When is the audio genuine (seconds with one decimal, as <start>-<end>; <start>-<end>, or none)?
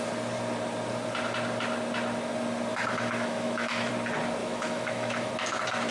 0.0-2.7; 3.9-4.4; 5.3-5.9